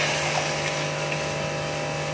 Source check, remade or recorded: recorded